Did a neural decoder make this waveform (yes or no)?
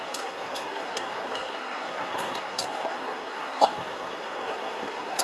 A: yes